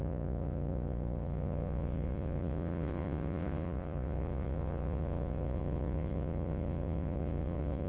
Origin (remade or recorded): remade